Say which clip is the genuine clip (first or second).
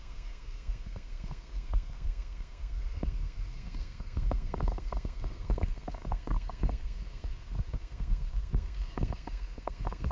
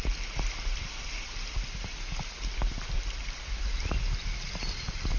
second